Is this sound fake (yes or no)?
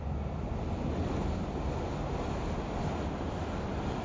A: no